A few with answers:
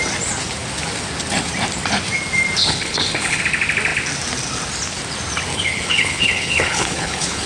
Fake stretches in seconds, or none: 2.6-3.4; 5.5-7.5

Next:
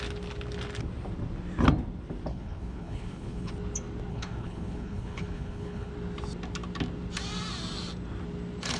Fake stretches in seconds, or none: 2.3-3.5; 4.1-5.9

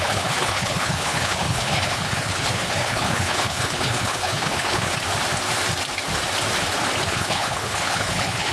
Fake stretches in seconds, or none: 0.0-4.9; 7.1-8.5

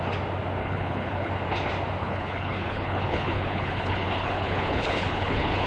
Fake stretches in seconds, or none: 0.6-1.3; 2.0-5.7

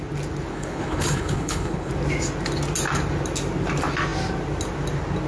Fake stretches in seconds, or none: 0.5-1.9

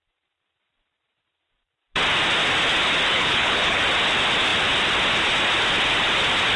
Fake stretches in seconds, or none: 3.1-3.8

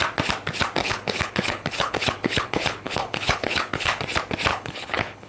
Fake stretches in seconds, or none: 0.8-4.0; 4.5-5.3

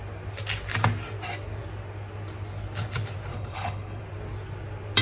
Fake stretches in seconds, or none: 3.3-4.0